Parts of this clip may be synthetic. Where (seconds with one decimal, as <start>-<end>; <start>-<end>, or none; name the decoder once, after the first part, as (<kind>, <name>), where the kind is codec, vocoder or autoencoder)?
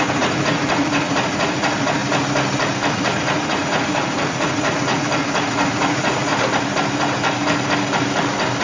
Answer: 0.0-2.0 (vocoder, Vocos); 2.9-6.3